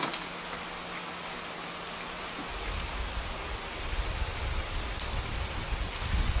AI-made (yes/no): no